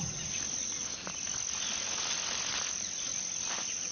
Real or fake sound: real